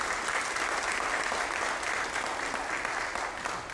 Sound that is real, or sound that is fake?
real